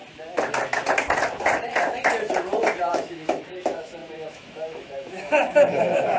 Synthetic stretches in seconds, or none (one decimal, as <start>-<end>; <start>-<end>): 2.9-6.2